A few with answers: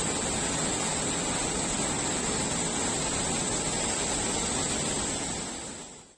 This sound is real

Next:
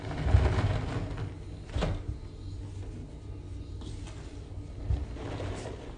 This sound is real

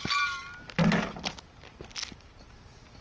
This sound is real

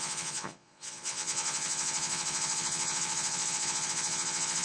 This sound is fake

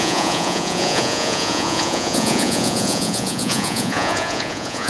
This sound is fake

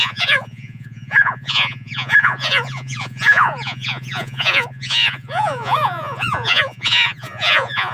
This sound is fake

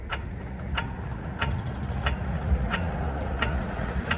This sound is fake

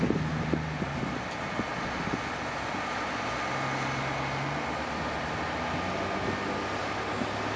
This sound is real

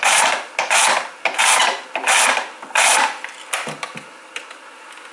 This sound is real